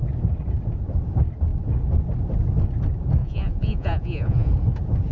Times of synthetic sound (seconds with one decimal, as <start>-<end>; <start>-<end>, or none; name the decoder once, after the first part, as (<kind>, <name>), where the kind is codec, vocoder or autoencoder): 3.2-4.5 (vocoder, Vocos)